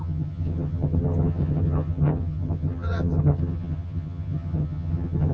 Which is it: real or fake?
fake